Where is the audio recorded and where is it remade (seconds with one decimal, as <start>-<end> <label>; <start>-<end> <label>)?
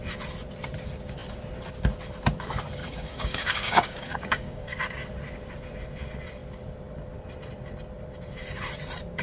0.0-2.8 recorded; 2.8-4.8 remade; 4.8-9.2 recorded